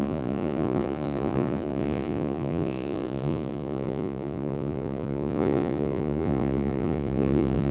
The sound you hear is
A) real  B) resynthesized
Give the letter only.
B